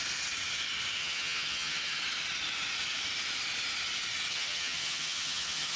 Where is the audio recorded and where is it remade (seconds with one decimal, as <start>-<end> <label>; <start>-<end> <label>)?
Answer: 0.0-1.0 recorded; 1.0-2.0 remade; 2.0-4.3 recorded; 4.3-5.8 remade